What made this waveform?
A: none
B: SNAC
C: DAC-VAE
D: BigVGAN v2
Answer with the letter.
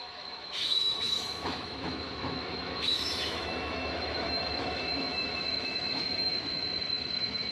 C